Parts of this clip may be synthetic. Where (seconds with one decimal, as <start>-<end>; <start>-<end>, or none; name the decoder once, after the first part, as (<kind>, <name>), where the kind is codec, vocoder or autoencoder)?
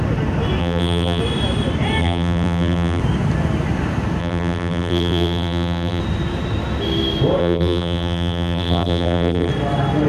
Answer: 0.6-1.2 (vocoder, BigVGAN v2); 2.0-3.0; 4.2-6.0; 7.4-9.5